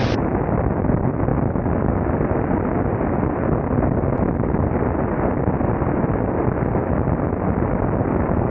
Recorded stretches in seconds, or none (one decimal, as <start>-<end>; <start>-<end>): 0.0-8.5